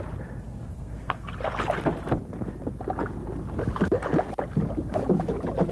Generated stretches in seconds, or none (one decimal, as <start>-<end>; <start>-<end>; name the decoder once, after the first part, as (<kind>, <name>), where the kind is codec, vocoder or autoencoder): 0.7-1.3 (codec, SNAC)